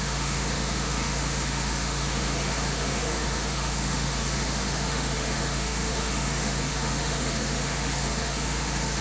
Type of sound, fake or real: fake